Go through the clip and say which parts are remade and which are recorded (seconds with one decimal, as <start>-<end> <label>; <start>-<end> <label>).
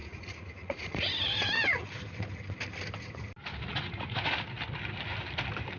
0.0-1.1 remade; 1.1-3.7 recorded; 3.7-4.3 remade; 4.3-5.8 recorded